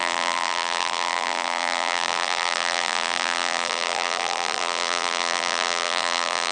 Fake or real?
fake